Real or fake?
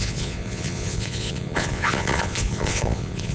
fake